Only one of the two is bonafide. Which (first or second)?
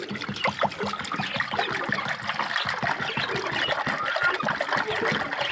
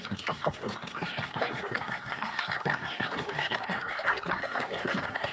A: first